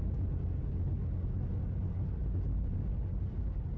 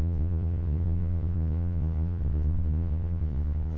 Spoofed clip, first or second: second